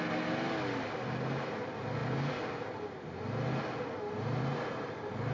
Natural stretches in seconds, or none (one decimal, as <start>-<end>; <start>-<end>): 0.0-5.3